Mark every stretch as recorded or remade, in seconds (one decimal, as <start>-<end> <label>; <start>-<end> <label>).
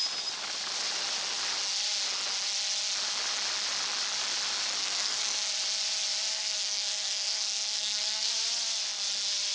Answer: 0.0-4.8 recorded; 4.8-5.5 remade; 5.5-6.3 recorded; 6.3-8.3 remade; 8.3-9.5 recorded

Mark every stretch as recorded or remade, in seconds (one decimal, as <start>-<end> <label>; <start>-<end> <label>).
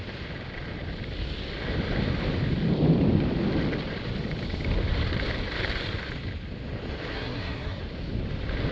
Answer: 0.0-7.1 recorded; 7.1-7.8 remade; 7.8-8.7 recorded